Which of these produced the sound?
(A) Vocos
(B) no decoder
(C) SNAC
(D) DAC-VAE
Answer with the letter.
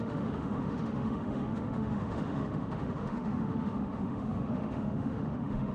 D